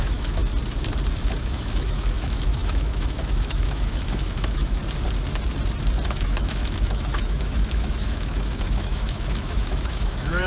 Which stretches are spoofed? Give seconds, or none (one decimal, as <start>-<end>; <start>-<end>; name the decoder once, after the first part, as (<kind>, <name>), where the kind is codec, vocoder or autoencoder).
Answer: 0.0-0.4 (autoencoder, DAC-VAE); 1.2-4.8; 6.1-10.5